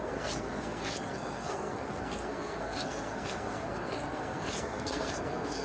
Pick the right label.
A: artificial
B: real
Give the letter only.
A